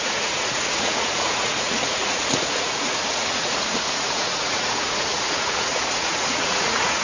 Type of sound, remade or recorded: remade